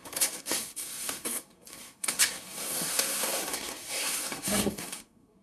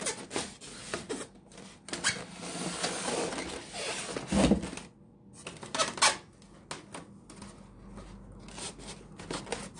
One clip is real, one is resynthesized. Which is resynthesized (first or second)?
first